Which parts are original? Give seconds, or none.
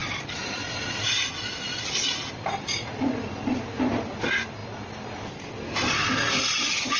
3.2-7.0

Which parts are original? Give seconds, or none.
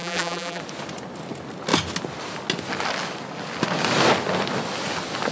0.6-5.3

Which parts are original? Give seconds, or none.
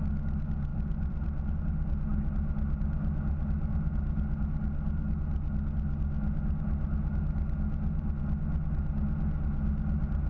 0.0-0.7; 1.6-10.3